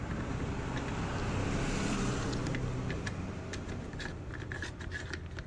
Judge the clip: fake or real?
real